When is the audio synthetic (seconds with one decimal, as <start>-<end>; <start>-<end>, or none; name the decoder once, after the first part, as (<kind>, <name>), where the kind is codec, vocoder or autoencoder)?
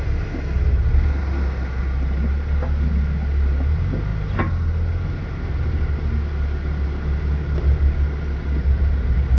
none